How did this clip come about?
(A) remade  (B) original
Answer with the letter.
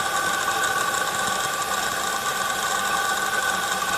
B